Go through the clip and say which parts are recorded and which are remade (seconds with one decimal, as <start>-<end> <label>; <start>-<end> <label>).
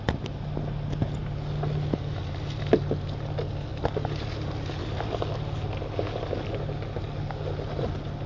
0.0-8.3 recorded